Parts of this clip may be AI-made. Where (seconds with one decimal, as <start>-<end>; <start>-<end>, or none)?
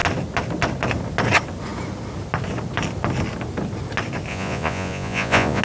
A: 4.3-5.6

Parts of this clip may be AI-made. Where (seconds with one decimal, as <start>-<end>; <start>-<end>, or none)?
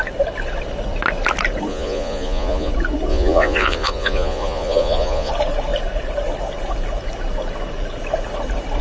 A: 1.7-2.7; 3.1-5.3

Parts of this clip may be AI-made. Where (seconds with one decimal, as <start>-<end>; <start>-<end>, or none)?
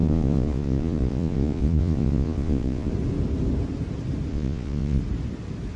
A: 0.0-2.9; 4.3-5.0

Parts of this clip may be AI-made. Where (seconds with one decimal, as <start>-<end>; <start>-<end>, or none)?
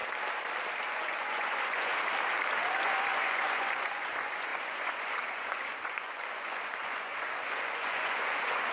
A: 0.9-1.9; 2.8-8.7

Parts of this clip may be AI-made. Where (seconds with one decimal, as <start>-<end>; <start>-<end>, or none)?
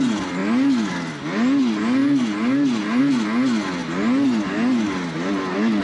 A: none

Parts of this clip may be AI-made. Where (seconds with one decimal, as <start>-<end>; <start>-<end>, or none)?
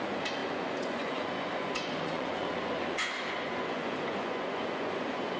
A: 0.0-5.4